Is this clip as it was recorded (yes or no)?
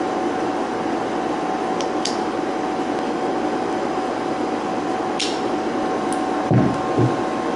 yes